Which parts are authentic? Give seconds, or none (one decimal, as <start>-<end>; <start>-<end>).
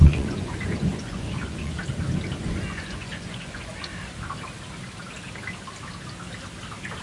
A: 1.8-2.4; 3.7-7.0